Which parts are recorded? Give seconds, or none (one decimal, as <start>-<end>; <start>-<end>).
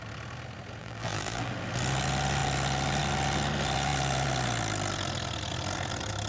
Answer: 0.0-0.8; 1.5-6.3